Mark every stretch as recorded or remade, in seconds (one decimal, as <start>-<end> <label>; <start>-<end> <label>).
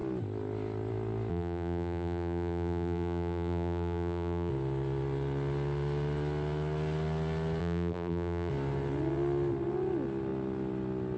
0.0-1.3 recorded; 1.3-4.5 remade; 4.5-7.6 recorded; 7.6-8.5 remade; 8.5-11.2 recorded